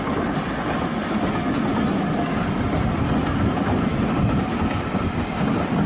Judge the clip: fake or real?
real